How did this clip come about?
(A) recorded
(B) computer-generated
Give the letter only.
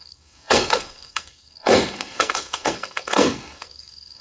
B